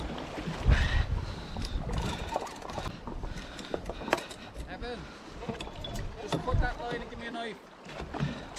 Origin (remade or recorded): recorded